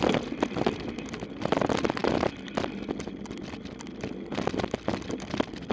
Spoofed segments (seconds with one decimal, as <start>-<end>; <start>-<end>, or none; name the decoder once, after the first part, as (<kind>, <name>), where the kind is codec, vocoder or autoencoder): none

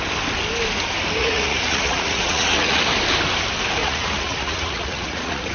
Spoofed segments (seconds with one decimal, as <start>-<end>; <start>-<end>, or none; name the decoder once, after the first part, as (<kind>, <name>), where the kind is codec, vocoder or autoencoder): 1.2-2.8 (vocoder, Vocos); 3.8-5.5